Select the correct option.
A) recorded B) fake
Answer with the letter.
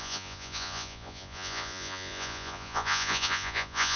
B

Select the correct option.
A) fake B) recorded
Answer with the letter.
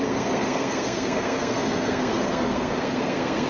A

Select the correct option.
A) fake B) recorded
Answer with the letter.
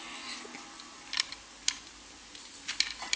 B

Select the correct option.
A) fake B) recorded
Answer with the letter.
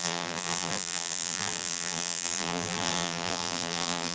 A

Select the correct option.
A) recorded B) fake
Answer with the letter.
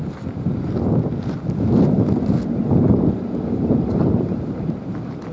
A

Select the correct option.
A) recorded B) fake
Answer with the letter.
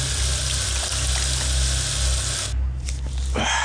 A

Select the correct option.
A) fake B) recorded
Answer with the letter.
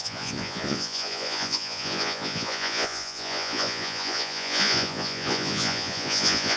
A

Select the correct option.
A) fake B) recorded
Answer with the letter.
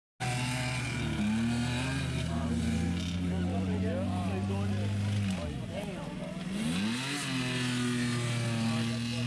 B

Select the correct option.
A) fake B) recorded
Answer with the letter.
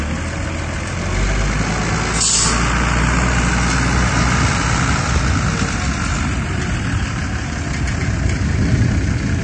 B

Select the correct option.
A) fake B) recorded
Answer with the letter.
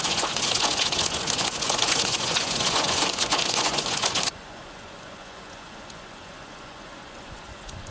A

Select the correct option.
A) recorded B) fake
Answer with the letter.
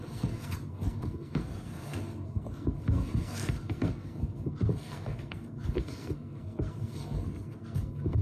B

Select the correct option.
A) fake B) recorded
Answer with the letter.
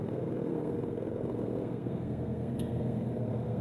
A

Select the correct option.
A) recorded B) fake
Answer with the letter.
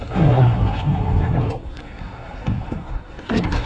B